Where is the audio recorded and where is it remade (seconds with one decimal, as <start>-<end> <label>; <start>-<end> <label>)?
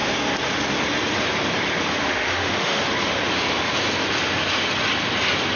0.0-2.0 recorded; 2.0-2.8 remade; 2.8-5.6 recorded